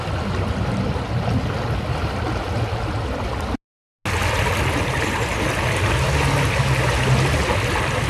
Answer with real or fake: real